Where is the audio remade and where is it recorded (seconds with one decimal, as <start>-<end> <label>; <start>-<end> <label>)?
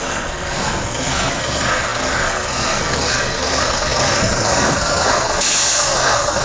0.0-6.4 remade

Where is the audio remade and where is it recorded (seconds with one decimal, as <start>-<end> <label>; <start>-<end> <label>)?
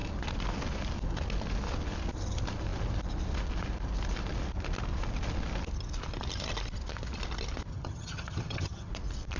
0.0-7.7 recorded; 7.7-8.9 remade; 8.9-9.4 recorded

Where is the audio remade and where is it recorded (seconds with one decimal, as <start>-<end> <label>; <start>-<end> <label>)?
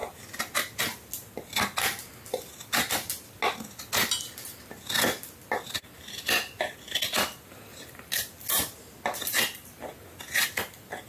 0.0-11.1 recorded